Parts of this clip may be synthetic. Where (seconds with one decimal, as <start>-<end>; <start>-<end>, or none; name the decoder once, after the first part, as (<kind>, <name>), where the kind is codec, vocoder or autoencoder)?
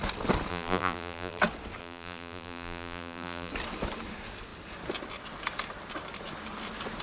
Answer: 0.5-1.4 (vocoder, BigVGAN v2); 1.8-3.5